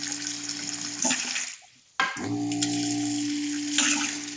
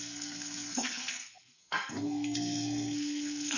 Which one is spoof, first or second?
second